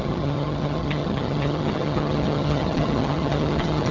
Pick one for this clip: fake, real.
fake